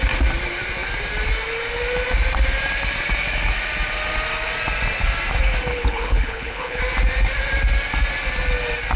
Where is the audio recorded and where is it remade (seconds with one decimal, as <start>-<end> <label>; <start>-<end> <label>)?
0.0-5.7 recorded; 5.7-6.8 remade; 6.8-9.0 recorded